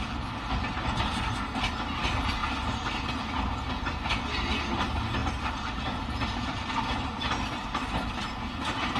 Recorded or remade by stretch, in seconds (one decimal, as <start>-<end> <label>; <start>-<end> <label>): 0.0-2.4 recorded; 2.4-3.1 remade; 3.1-5.2 recorded; 5.2-8.1 remade; 8.1-9.0 recorded